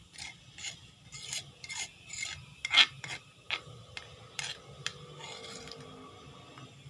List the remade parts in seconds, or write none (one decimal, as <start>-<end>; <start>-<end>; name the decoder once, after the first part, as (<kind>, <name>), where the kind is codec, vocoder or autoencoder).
none